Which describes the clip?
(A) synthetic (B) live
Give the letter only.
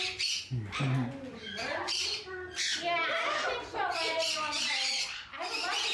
B